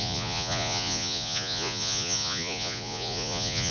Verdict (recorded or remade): remade